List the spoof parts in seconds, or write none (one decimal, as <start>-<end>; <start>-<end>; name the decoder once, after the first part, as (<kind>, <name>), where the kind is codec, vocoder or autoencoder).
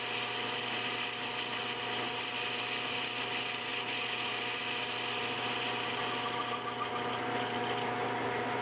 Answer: none